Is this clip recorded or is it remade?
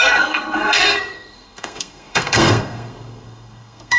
remade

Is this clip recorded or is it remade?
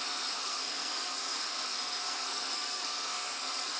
remade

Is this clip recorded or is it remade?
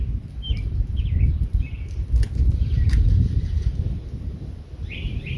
recorded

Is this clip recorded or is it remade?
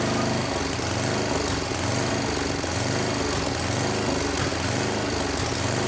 recorded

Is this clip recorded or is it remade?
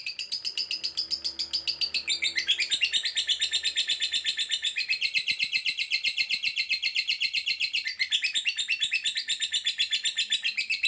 recorded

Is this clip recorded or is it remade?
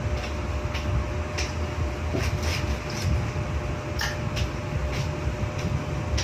recorded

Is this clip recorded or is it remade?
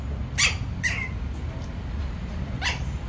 recorded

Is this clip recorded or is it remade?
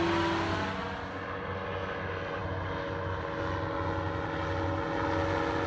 recorded